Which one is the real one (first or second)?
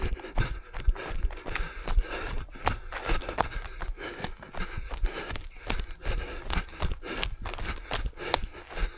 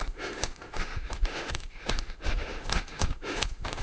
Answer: first